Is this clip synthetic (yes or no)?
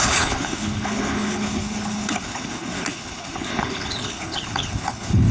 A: yes